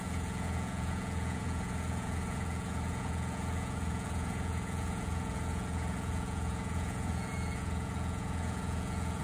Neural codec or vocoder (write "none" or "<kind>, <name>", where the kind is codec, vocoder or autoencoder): vocoder, Vocos